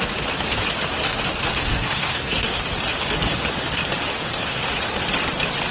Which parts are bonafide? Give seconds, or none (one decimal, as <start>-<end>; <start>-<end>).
0.0-1.6; 2.6-4.3; 4.8-5.7